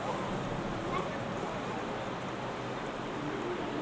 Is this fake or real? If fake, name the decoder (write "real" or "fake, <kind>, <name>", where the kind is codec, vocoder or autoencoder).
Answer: real